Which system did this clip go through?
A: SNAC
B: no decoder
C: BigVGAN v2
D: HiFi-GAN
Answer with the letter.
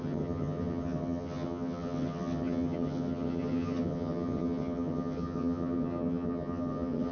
D